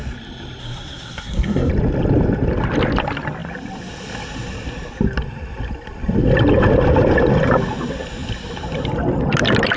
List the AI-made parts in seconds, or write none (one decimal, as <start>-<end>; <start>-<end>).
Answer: 0.6-1.7